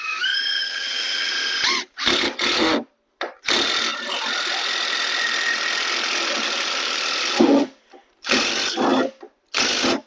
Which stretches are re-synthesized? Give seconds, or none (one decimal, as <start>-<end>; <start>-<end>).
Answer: 0.6-1.3